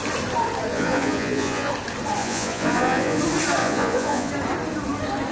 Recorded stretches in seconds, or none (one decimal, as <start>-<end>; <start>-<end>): 0.0-0.7; 1.7-2.2; 3.2-3.6; 4.3-5.3